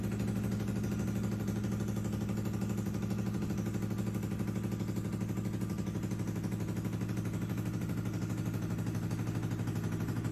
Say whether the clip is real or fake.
real